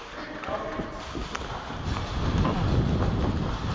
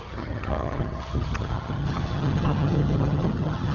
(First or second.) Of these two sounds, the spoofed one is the second